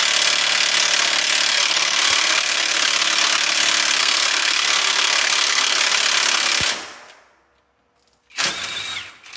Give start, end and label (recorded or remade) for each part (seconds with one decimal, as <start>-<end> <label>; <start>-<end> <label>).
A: 0.0-1.5 recorded; 1.5-2.9 remade; 2.9-4.0 recorded; 4.0-5.9 remade; 5.9-9.4 recorded